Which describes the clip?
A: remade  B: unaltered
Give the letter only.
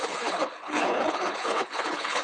A